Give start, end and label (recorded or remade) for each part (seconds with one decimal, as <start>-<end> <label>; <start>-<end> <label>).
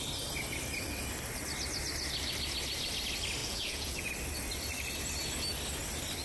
0.0-3.4 recorded; 3.4-4.1 remade; 4.1-6.2 recorded